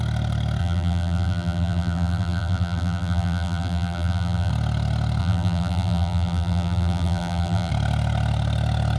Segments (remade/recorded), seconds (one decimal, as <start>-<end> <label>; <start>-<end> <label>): 0.0-0.6 recorded; 0.6-4.5 remade; 4.5-5.2 recorded; 5.2-7.7 remade; 7.7-9.0 recorded